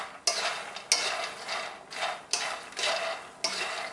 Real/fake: real